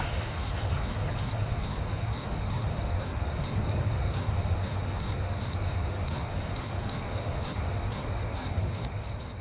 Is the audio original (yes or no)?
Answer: no